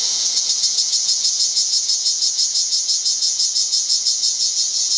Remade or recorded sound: remade